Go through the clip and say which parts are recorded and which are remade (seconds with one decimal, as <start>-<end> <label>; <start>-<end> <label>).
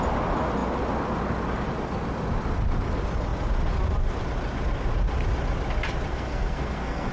0.0-6.1 recorded; 6.1-7.1 remade